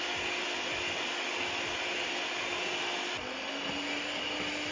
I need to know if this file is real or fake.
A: real